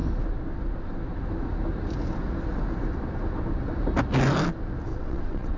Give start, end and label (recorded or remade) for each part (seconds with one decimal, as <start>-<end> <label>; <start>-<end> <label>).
0.0-4.9 recorded; 4.9-5.6 remade